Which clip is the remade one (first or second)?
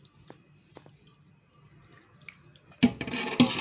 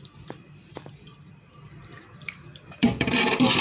second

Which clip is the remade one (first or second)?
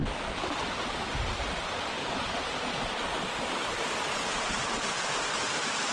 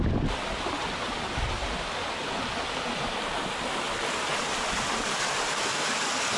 first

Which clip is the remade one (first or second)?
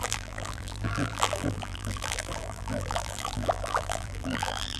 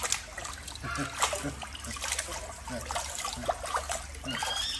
first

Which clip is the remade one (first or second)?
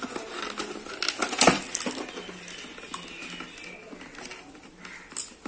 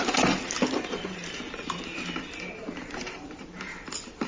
second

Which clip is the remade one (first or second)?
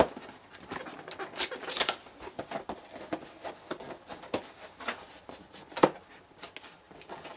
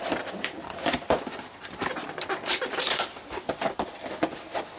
second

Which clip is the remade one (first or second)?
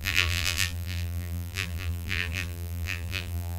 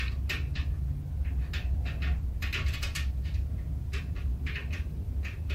first